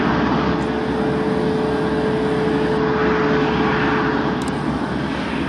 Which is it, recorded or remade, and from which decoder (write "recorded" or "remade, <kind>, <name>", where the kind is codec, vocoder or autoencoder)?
recorded